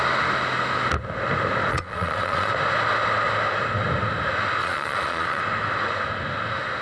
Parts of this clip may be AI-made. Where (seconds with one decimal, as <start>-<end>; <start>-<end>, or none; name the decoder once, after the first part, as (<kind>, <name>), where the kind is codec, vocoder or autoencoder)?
1.7-2.5 (vocoder, Vocos); 4.6-5.4